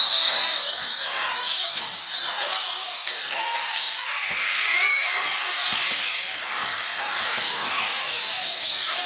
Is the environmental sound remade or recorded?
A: remade